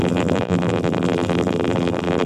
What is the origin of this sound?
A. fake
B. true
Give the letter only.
A